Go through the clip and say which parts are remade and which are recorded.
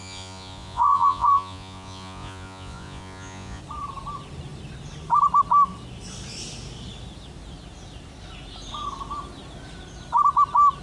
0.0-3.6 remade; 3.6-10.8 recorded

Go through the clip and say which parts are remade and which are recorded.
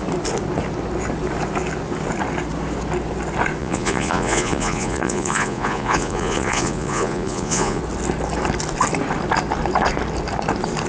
0.0-3.6 recorded; 3.6-7.8 remade; 7.8-10.9 recorded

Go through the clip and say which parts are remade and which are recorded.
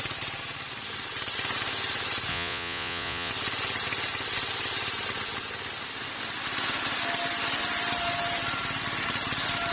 0.0-2.3 recorded; 2.3-3.3 remade; 3.3-9.7 recorded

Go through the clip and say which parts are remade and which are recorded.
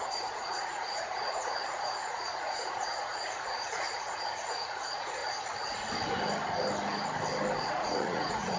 0.0-5.2 remade; 5.2-7.7 recorded; 7.7-8.6 remade